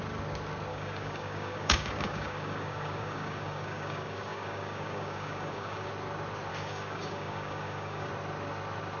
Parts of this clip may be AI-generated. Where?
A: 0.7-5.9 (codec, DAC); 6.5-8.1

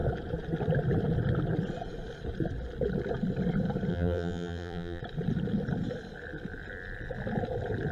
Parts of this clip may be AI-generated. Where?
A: 3.9-5.0 (vocoder, BigVGAN v2)

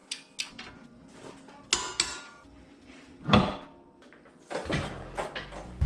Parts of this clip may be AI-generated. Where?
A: none

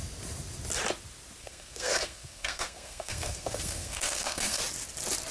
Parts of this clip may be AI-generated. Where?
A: 1.4-4.6 (codec, SNAC)

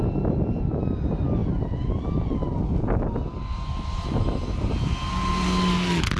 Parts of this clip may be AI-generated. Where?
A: none